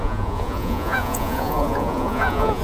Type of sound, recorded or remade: remade